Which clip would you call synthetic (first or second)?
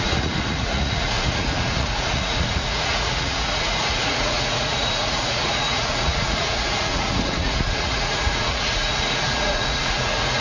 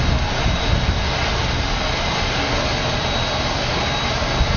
first